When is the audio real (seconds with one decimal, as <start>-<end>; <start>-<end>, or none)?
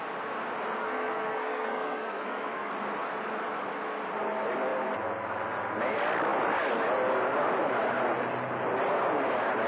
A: 0.0-0.8; 2.7-9.7